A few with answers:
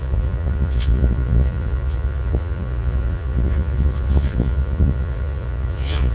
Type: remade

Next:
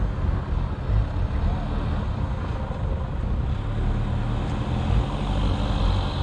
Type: recorded